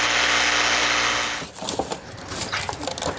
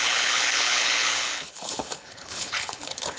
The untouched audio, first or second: first